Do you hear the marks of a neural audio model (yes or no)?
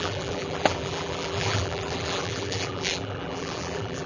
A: yes